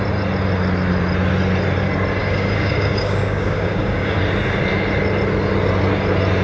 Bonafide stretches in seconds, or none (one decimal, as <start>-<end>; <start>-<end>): 0.0-2.2; 4.2-6.4